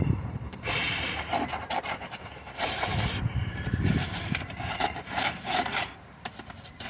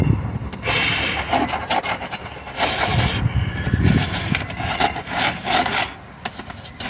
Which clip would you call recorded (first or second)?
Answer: second